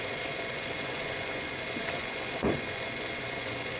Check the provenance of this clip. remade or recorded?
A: remade